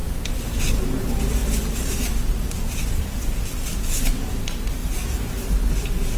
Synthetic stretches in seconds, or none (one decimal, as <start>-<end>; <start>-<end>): none